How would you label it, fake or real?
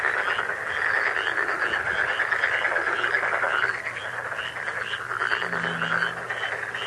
real